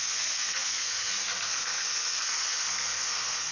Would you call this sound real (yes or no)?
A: no